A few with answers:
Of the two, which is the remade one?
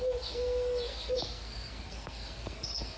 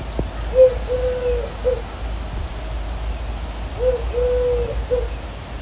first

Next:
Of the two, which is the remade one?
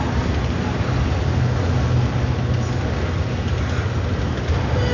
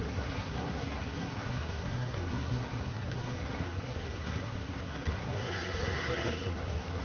second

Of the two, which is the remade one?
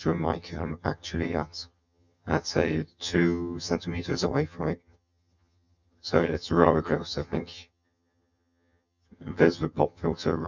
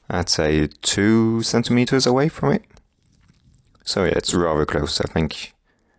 first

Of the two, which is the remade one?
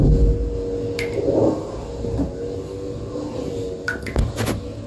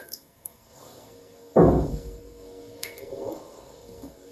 second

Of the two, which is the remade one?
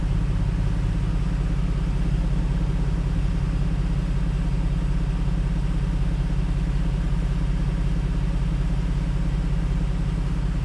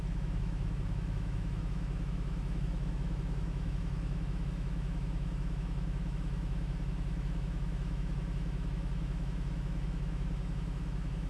second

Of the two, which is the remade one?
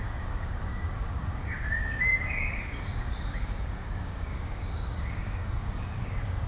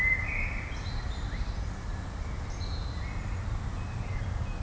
first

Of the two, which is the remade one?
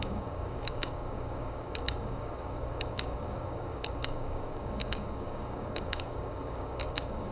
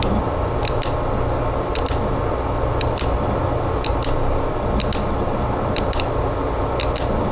first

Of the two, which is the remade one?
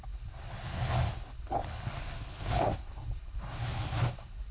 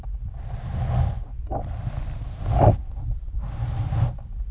first